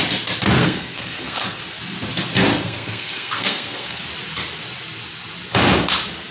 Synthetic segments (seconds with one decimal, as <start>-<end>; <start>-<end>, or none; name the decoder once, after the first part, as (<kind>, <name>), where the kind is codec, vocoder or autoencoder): 0.6-1.6 (codec, SNAC); 2.5-4.0